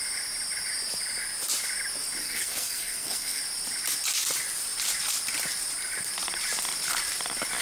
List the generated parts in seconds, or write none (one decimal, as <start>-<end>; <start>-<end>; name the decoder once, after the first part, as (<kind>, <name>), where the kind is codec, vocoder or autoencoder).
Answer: 2.2-3.4 (codec, SNAC)